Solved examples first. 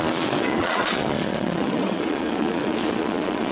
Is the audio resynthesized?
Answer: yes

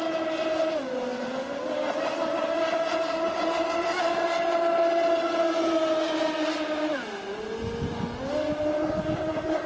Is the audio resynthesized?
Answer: no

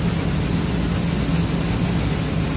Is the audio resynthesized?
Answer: no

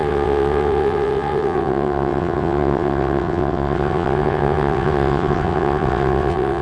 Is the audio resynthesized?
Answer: yes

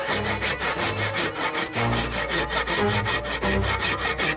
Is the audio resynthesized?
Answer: no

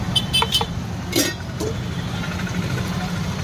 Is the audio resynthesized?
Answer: no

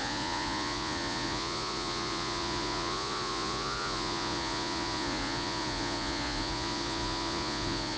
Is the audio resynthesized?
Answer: yes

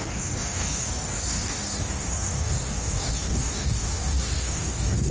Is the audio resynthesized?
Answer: yes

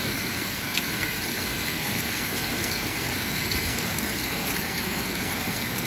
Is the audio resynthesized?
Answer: yes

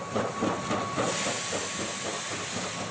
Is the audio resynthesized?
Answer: no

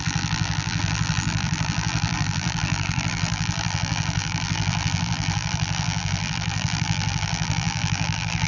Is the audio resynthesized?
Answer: yes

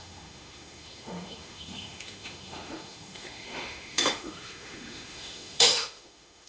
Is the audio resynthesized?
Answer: yes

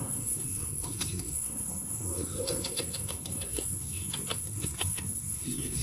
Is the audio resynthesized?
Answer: yes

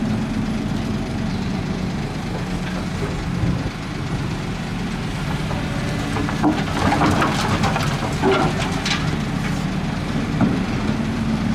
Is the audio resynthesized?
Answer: no